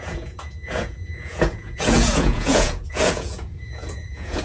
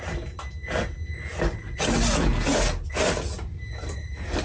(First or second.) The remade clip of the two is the first